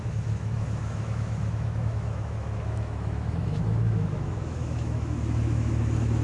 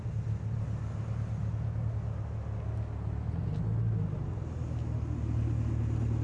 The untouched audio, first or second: second